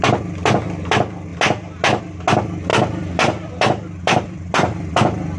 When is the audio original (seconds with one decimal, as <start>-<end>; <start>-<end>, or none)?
0.0-2.7